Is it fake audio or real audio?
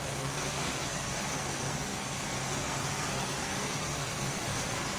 fake